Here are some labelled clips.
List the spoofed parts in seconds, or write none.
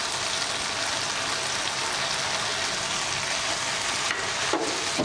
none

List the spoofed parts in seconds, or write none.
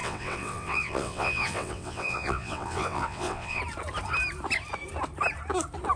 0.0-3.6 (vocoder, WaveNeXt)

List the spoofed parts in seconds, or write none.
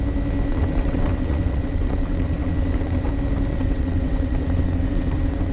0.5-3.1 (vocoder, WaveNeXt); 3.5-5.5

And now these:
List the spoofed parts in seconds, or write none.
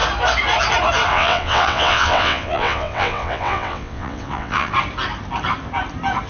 1.1-4.7 (vocoder, WaveNeXt)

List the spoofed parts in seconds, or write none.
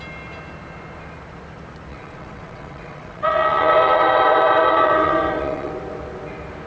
1.9-5.7 (vocoder, WaveNeXt)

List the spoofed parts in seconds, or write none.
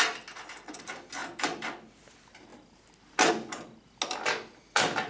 none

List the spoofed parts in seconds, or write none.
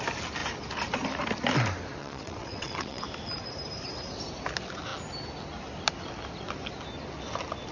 2.0-3.0 (vocoder, WaveNeXt)